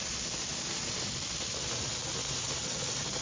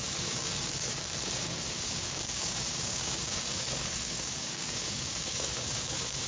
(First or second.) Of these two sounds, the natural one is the first